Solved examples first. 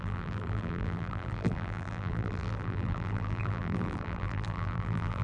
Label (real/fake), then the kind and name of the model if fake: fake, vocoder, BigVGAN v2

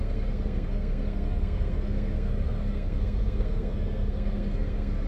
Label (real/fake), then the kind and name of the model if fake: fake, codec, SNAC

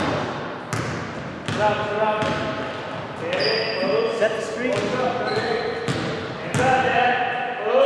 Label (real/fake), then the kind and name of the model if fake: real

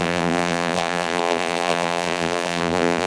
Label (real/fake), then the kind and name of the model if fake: fake, vocoder, BigVGAN v2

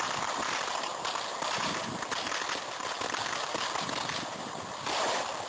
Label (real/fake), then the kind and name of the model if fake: fake, vocoder, BigVGAN v2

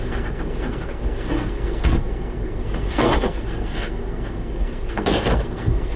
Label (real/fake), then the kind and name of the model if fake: fake, codec, SNAC